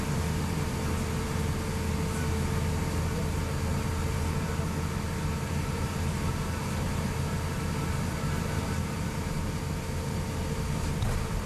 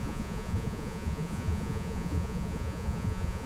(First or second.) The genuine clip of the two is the first